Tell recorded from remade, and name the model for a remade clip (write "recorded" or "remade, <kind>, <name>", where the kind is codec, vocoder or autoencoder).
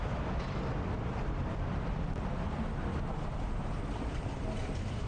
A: recorded